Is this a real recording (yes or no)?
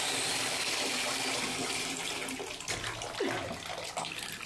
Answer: yes